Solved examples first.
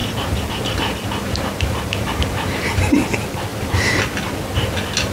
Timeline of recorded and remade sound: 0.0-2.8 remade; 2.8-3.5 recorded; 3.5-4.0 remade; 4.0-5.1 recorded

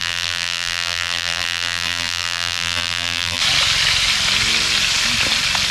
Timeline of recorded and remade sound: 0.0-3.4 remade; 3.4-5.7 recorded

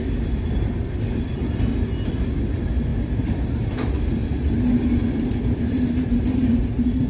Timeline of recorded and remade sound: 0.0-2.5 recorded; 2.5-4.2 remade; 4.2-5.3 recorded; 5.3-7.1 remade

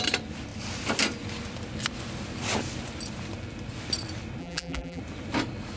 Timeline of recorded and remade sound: 0.0-4.4 recorded; 4.4-5.0 remade; 5.0-5.8 recorded